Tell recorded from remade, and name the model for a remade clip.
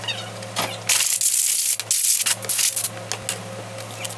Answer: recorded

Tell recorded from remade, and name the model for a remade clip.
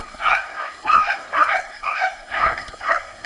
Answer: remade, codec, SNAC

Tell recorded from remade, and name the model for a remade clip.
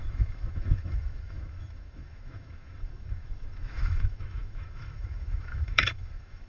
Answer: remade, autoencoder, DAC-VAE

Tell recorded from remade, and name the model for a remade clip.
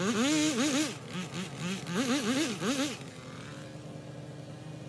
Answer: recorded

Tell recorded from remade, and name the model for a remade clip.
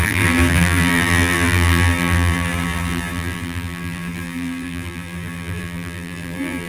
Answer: remade, vocoder, BigVGAN v2